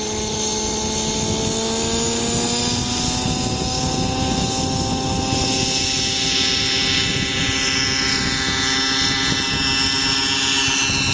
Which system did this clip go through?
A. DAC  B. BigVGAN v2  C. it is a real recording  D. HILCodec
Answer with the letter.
C